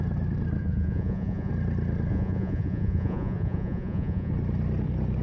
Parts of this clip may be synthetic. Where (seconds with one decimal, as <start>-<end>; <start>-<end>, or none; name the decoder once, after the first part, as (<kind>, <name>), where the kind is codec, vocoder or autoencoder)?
0.6-1.5 (vocoder, Vocos); 2.1-4.3